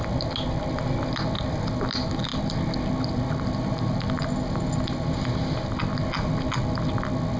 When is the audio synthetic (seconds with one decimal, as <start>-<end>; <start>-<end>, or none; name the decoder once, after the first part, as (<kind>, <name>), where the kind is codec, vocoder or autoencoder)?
none